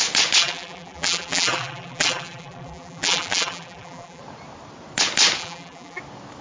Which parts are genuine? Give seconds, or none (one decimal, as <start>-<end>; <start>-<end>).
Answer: 0.0-0.4; 4.2-5.4; 6.0-6.4